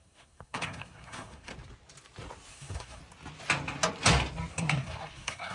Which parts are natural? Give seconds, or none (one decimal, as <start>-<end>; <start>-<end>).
1.5-2.5; 3.0-4.5